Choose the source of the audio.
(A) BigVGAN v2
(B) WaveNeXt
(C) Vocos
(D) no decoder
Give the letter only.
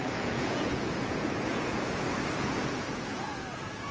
C